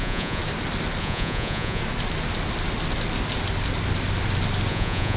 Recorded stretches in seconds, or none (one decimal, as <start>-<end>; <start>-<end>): 0.4-1.0; 1.8-4.7